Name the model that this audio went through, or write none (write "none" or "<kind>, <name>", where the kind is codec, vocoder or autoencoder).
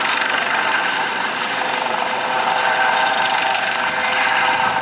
none